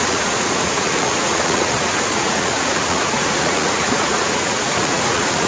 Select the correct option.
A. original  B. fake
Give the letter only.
B